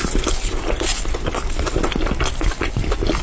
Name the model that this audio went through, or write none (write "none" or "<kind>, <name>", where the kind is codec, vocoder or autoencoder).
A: none